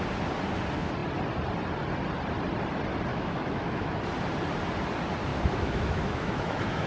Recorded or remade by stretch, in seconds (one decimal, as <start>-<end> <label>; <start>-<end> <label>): 0.0-3.1 recorded; 3.1-4.0 remade; 4.0-5.3 recorded; 5.3-6.9 remade